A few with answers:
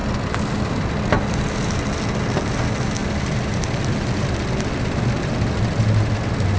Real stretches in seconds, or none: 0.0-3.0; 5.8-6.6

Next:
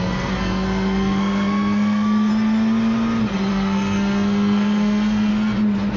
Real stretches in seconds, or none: 2.3-3.5; 5.3-6.0